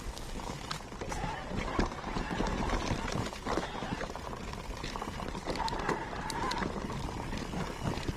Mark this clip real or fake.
real